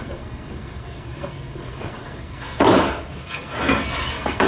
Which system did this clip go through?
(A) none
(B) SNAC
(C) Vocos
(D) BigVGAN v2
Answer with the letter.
B